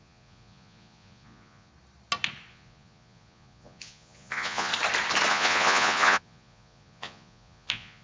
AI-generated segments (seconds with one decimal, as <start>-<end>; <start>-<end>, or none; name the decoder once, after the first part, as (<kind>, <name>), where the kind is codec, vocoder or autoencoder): 0.0-1.7 (vocoder, Vocos); 2.5-4.7; 5.3-8.0